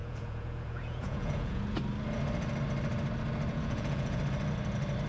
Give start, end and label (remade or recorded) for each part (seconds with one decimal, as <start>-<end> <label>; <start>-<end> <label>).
0.0-1.6 remade; 1.6-3.5 recorded; 3.5-4.2 remade; 4.2-5.1 recorded

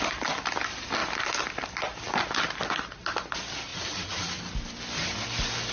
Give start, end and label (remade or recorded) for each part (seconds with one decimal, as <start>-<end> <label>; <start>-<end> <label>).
0.0-3.7 recorded; 3.7-4.4 remade; 4.4-5.7 recorded